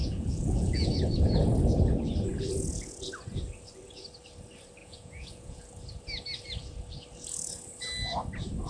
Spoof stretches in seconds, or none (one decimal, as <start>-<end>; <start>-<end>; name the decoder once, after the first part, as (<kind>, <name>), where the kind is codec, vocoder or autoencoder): 0.0-0.9 (vocoder, Vocos); 4.8-5.6